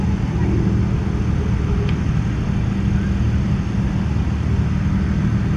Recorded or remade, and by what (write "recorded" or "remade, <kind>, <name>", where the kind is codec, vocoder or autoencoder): recorded